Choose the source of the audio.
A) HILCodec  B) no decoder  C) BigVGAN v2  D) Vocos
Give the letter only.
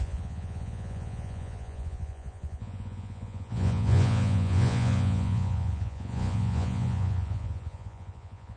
D